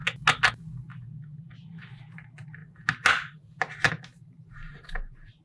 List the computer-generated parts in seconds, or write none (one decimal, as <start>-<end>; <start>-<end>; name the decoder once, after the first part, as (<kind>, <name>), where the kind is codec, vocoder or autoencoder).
0.5-0.9 (vocoder, BigVGAN v2); 2.0-2.6; 3.9-5.4